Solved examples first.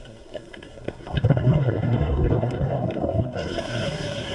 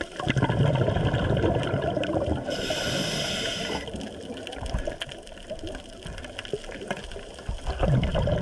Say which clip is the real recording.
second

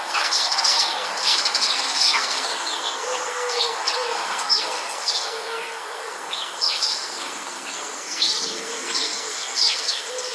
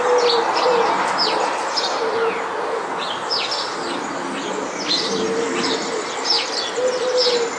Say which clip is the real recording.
second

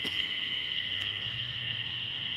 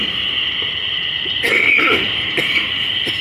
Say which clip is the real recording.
second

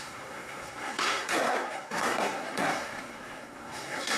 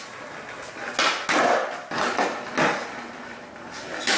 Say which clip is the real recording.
second